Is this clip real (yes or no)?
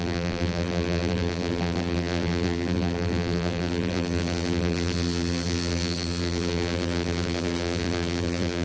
no